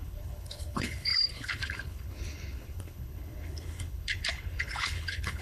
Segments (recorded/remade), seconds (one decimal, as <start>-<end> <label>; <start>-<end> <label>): 0.0-5.4 remade